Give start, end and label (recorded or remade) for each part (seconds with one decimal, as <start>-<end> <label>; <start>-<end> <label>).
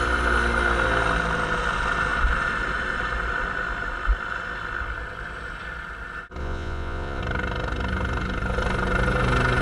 0.0-6.4 recorded; 6.4-7.2 remade; 7.2-9.6 recorded